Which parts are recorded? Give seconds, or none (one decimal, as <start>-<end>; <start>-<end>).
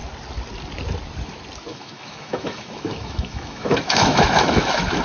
0.0-1.7